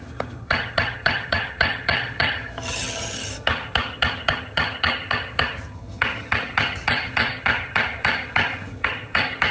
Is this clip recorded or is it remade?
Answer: remade